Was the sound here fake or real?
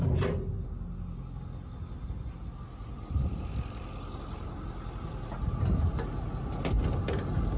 real